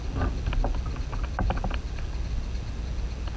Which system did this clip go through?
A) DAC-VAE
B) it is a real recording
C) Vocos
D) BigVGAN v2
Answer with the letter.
B